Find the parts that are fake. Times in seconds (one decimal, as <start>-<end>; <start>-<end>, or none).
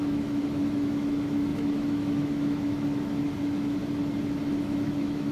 0.0-3.8; 4.4-5.3